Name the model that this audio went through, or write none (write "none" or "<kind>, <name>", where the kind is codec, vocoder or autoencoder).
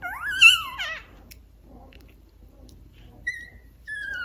vocoder, BigVGAN v2